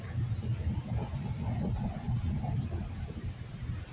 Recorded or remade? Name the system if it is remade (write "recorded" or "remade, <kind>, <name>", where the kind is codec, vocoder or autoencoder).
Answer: recorded